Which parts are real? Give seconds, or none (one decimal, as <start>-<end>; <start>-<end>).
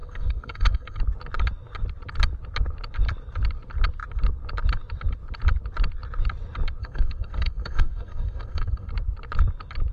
1.0-6.8; 8.9-9.9